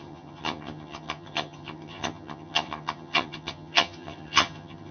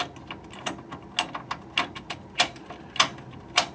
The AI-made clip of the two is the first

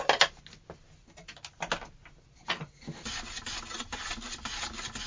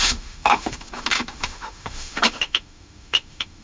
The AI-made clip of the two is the second